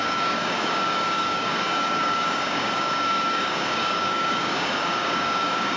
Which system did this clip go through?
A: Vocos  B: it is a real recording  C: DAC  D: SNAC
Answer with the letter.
C